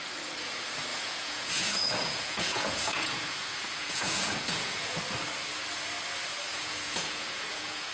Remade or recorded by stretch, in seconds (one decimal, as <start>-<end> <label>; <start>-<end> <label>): 0.0-0.9 recorded; 0.9-5.0 remade; 5.0-6.5 recorded; 6.5-7.9 remade